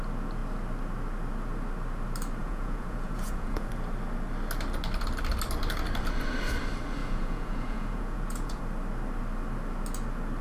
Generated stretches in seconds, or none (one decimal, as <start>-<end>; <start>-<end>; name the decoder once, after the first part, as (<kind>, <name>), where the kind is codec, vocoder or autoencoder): 2.4-3.7 (vocoder, Vocos); 7.0-8.6